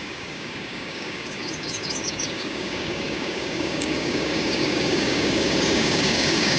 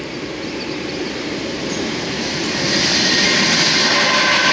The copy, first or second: first